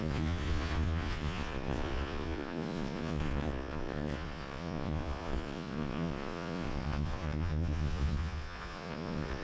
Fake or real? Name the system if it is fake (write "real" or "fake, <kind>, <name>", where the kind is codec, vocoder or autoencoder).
fake, vocoder, Vocos